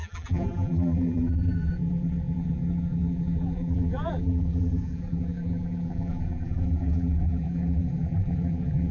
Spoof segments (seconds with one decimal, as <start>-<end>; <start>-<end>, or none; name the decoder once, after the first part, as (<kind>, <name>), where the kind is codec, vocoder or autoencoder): 0.0-8.9 (vocoder, BigVGAN v2)

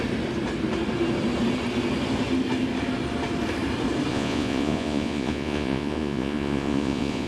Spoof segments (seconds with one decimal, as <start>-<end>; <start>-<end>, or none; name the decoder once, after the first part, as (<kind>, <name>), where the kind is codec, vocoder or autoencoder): 4.1-7.3 (vocoder, Vocos)

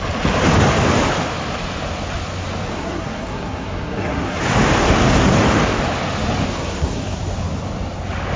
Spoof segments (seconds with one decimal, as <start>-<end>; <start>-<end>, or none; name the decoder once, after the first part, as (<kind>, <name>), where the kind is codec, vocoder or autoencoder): 2.7-4.4 (codec, SNAC); 6.5-7.2

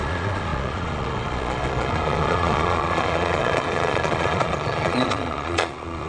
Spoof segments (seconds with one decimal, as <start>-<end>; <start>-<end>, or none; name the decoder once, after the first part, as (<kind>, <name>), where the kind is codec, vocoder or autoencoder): 0.0-6.1 (vocoder, Vocos)

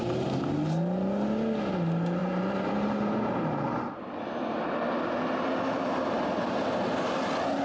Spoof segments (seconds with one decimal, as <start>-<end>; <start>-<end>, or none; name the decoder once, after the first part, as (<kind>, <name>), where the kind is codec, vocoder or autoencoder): 2.2-4.2 (vocoder, BigVGAN v2)

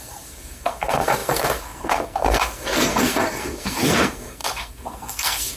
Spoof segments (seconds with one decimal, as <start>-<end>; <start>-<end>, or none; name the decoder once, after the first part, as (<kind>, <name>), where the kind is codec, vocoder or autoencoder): 0.0-5.6 (codec, SNAC)

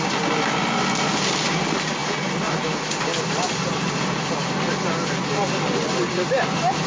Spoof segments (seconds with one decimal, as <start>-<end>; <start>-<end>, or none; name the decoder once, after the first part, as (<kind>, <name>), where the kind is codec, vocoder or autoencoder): none

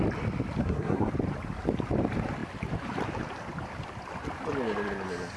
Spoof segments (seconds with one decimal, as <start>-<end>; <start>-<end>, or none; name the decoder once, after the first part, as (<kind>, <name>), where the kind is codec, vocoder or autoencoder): 0.6-1.1 (codec, SNAC)